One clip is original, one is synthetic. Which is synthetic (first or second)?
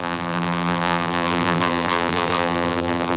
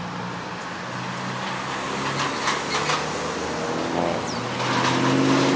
first